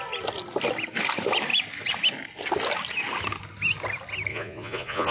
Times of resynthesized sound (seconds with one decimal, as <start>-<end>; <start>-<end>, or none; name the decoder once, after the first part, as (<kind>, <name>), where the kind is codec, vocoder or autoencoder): 4.3-5.1 (vocoder, Vocos)